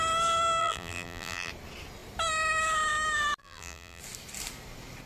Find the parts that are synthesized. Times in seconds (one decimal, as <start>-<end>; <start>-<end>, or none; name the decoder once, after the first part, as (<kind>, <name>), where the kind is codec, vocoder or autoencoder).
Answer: 0.6-1.5 (vocoder, BigVGAN v2); 3.4-4.0